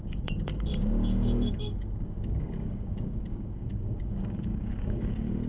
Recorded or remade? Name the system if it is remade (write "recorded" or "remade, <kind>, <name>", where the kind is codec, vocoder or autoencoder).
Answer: remade, codec, DAC